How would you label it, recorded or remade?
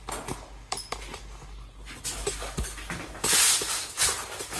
recorded